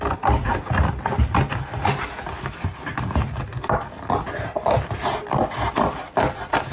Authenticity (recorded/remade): recorded